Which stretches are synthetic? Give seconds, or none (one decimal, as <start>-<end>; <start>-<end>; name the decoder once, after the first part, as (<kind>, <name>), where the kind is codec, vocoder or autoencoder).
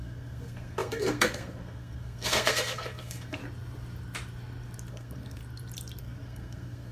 0.0-3.4 (codec, SNAC); 4.9-5.4; 6.0-6.9